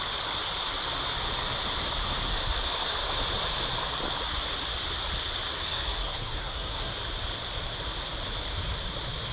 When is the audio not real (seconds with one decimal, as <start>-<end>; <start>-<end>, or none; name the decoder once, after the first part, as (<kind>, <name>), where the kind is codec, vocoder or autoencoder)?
5.5-6.9 (codec, SNAC)